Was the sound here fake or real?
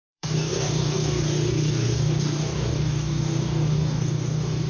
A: fake